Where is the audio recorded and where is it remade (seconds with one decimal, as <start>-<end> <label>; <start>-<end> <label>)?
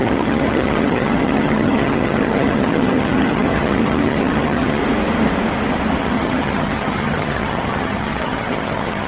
0.0-4.8 remade; 4.8-6.0 recorded; 6.0-9.1 remade